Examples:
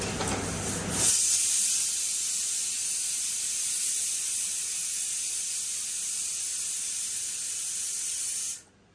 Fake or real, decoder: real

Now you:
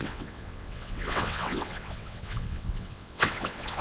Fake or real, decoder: fake, vocoder, WaveNeXt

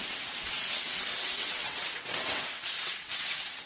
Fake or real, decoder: fake, vocoder, WaveNeXt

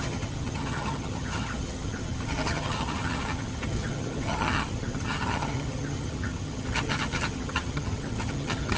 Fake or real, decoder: fake, vocoder, HiFi-GAN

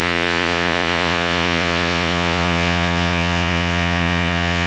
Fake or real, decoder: fake, vocoder, Vocos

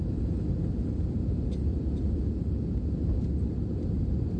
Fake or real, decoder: real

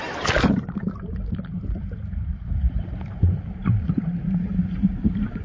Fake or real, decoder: fake, vocoder, BigVGAN v2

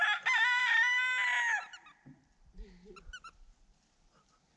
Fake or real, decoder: real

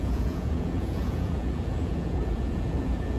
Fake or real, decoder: fake, vocoder, Vocos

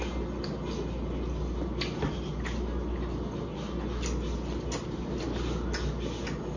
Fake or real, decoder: real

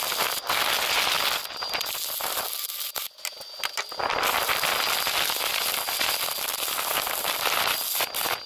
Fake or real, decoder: real